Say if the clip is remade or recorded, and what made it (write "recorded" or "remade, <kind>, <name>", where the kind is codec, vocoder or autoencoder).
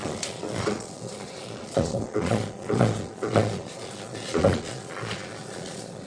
remade, vocoder, Vocos